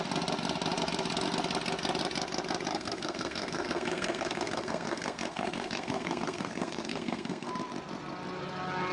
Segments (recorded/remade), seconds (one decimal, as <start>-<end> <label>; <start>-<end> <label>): 0.0-2.7 recorded; 2.7-7.5 remade; 7.5-8.9 recorded